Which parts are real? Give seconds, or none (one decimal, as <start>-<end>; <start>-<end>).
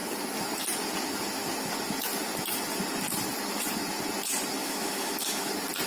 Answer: 0.0-4.6; 5.5-5.9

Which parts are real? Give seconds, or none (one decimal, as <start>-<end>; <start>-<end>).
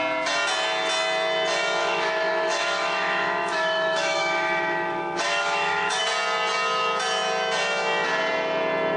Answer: 0.0-1.8; 6.0-9.0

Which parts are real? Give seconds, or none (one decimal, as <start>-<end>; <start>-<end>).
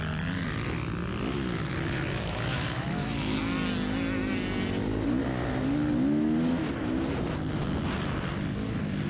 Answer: 0.0-1.6; 3.4-9.1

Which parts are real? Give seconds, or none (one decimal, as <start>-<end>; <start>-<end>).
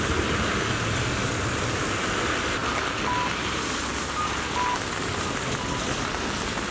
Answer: 0.0-6.7